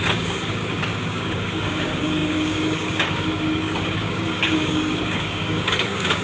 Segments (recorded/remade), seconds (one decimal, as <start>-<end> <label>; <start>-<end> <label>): 0.0-6.2 remade